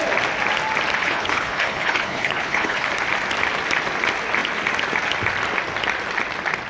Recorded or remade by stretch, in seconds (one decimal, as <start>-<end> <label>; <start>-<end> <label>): 0.0-1.0 recorded; 1.0-2.9 remade; 2.9-6.7 recorded